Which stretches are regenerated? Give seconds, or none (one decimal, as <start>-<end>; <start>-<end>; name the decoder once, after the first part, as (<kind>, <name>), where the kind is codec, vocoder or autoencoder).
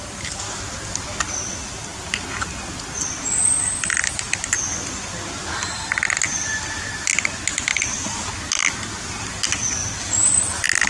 none